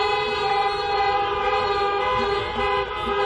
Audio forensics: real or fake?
real